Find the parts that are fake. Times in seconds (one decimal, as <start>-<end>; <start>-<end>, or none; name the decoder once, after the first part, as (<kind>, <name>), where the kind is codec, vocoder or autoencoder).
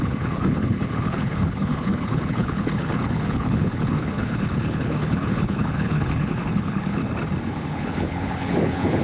0.0-7.0 (codec, HILCodec); 7.5-9.0